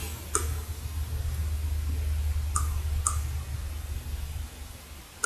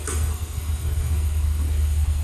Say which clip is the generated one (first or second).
second